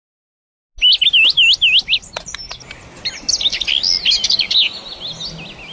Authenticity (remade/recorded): recorded